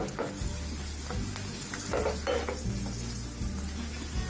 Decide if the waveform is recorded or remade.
recorded